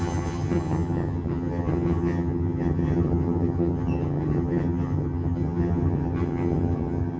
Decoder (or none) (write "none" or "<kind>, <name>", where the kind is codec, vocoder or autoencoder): vocoder, HiFi-GAN